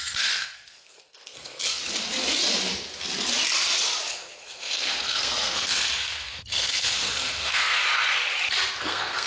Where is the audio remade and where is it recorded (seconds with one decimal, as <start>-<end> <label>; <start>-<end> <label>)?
0.0-1.8 remade; 1.8-4.1 recorded; 4.1-7.8 remade; 7.8-8.8 recorded; 8.8-9.3 remade